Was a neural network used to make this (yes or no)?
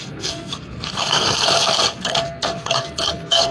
yes